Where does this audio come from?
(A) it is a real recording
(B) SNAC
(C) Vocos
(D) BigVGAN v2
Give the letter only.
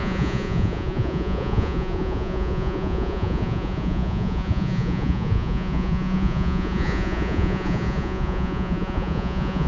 C